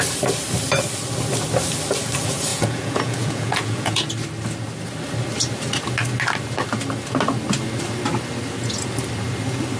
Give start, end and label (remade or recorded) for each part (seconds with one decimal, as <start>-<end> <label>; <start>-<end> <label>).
0.0-2.5 recorded; 2.5-4.1 remade; 4.1-9.8 recorded